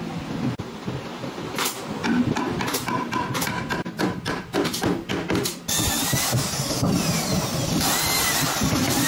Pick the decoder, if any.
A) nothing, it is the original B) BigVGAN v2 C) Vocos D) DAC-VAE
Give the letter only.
B